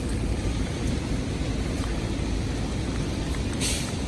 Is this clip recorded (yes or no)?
no